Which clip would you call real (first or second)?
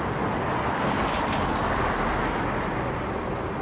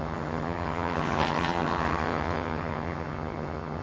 first